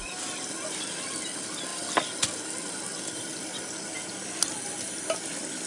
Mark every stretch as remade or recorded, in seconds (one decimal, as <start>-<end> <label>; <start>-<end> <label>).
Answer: 0.0-5.7 recorded